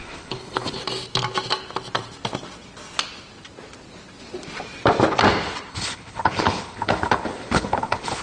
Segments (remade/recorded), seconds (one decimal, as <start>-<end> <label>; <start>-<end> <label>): 0.0-0.8 remade; 0.8-5.7 recorded; 5.7-8.2 remade